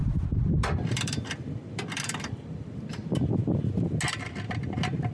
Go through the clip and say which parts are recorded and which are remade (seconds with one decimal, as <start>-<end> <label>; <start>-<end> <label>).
0.0-3.1 remade; 3.1-5.1 recorded